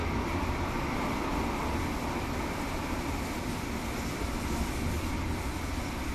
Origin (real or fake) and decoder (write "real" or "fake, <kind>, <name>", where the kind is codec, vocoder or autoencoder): real